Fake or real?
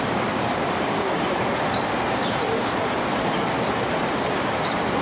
fake